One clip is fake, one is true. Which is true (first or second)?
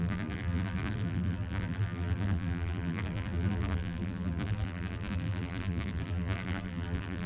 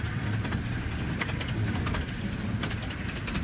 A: second